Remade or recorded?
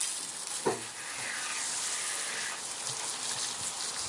recorded